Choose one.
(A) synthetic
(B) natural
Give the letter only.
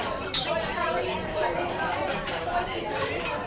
A